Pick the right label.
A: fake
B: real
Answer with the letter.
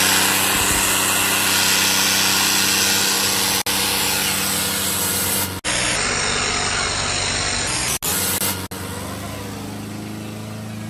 B